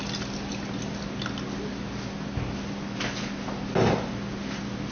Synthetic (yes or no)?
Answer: no